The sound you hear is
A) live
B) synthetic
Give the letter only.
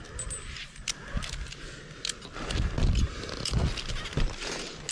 A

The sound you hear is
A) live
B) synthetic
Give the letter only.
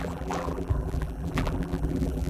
B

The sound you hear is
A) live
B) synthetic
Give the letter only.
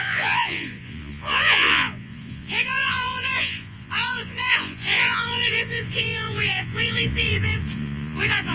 B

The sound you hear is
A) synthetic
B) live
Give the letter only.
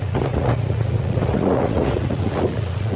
A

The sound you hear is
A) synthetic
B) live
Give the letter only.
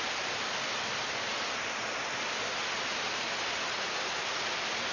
B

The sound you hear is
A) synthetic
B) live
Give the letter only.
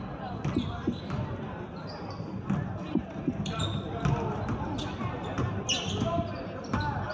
B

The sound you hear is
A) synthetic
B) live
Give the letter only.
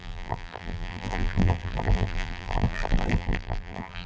A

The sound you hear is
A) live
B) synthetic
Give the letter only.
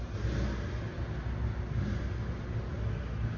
A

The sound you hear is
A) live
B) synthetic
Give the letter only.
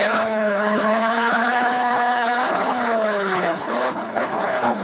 B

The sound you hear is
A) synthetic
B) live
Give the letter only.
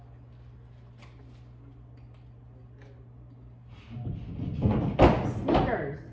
B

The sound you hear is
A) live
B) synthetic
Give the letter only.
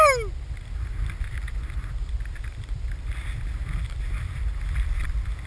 A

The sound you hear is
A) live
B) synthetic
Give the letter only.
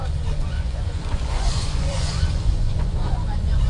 B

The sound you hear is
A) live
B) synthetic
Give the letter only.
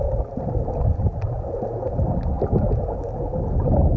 A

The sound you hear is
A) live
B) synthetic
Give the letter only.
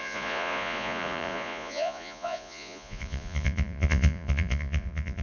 B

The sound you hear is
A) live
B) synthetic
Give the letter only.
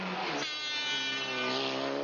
A